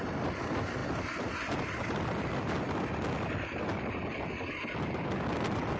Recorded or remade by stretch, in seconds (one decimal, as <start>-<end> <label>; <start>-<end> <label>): 0.0-5.8 recorded

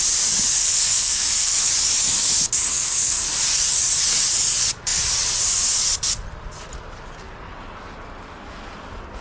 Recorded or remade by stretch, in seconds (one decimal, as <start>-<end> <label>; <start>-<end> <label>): 0.0-0.6 recorded; 0.6-1.7 remade; 1.7-2.7 recorded; 2.7-3.3 remade; 3.3-9.2 recorded

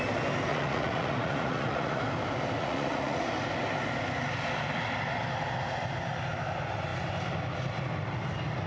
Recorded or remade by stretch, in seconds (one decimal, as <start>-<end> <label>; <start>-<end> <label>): 0.0-0.5 recorded; 0.5-2.0 remade; 2.0-2.6 recorded; 2.6-3.2 remade; 3.2-8.7 recorded

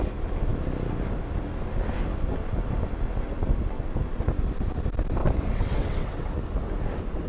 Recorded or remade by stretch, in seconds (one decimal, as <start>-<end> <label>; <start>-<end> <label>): 0.0-5.2 recorded; 5.2-6.4 remade; 6.4-7.3 recorded

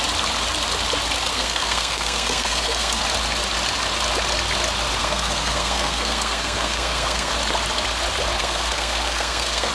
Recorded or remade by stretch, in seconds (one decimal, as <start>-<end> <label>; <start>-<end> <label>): 0.0-1.3 recorded; 1.3-3.0 remade; 3.0-5.0 recorded; 5.0-7.3 remade; 7.3-8.4 recorded; 8.4-9.7 remade

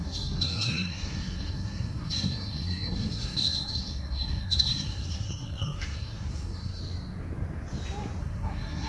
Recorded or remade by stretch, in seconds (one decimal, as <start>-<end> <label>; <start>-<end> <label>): 0.0-6.8 remade; 6.8-8.2 recorded; 8.2-8.9 remade

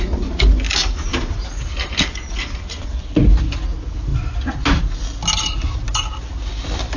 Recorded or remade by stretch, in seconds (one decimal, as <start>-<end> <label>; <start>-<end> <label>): 0.0-7.0 recorded

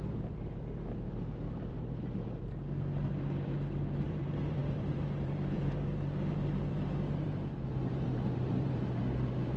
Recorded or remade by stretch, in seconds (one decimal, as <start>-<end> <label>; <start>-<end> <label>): 0.0-9.6 remade